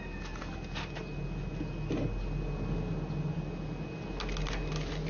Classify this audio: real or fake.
real